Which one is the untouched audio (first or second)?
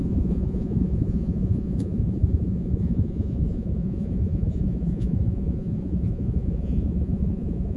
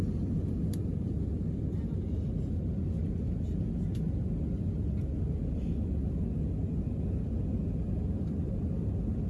second